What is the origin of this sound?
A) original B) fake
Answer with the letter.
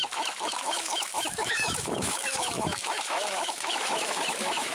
B